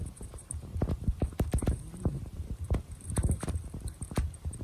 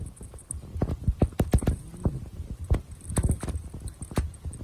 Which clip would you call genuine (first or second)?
second